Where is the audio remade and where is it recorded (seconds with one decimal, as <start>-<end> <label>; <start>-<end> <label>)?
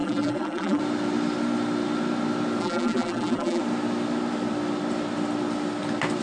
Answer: 0.0-0.8 remade; 0.8-2.6 recorded; 2.6-3.6 remade; 3.6-6.2 recorded